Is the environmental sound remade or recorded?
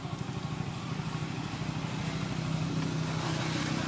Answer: recorded